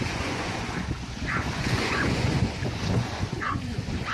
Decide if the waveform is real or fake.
fake